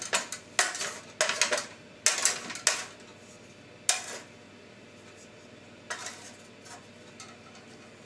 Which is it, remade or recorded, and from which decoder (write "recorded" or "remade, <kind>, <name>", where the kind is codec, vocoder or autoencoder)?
recorded